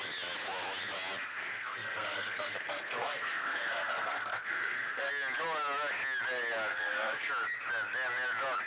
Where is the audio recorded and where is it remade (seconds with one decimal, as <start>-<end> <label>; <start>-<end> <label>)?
0.0-1.3 recorded; 1.3-5.1 remade; 5.1-6.7 recorded; 6.7-7.3 remade; 7.3-8.7 recorded

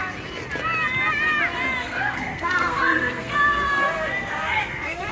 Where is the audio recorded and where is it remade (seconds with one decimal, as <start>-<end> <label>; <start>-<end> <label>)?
0.0-1.8 recorded; 1.8-5.1 remade

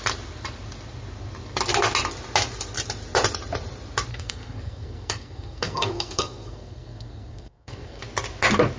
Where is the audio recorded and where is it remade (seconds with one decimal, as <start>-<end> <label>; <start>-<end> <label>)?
0.0-4.1 recorded; 4.1-8.0 remade; 8.0-8.8 recorded